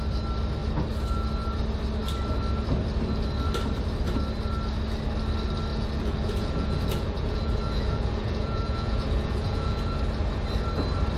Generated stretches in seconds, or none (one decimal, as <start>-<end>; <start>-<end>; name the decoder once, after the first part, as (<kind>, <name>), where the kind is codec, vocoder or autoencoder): 5.7-10.0 (vocoder, Vocos)